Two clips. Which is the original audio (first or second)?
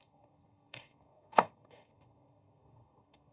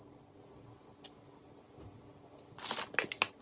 second